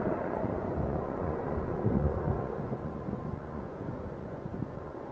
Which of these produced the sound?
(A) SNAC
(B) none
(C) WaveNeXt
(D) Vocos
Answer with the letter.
D